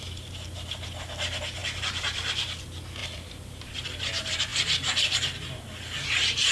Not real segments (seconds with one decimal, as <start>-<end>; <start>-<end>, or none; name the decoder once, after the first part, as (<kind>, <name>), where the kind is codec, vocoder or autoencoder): 1.6-2.6 (vocoder, BigVGAN v2); 3.0-3.8